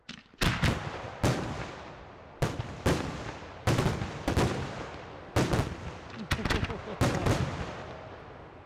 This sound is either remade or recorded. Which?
recorded